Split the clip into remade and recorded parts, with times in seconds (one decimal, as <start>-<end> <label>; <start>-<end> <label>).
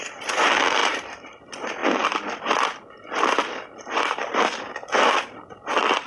0.0-0.8 recorded; 0.8-1.4 remade; 1.4-6.1 recorded